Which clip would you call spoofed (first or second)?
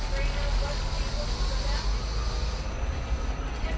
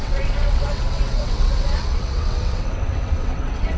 second